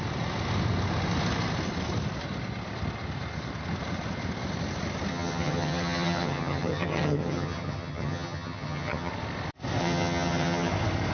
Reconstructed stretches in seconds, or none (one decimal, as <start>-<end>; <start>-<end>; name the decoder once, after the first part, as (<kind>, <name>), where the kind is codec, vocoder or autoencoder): 5.1-9.1 (vocoder, HiFi-GAN); 9.8-10.7